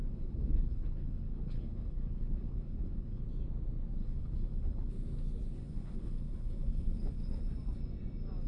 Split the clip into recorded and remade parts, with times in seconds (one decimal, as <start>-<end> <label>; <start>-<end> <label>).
0.0-3.2 remade; 3.2-4.0 recorded; 4.0-4.9 remade; 4.9-5.6 recorded; 5.6-7.4 remade; 7.4-8.5 recorded